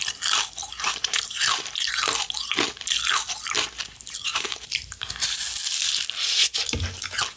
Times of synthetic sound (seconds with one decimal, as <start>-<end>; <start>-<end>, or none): 0.6-1.9; 4.3-5.1